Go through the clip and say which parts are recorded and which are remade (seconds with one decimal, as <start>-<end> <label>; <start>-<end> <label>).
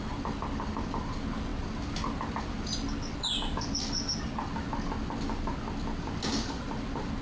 0.0-7.2 recorded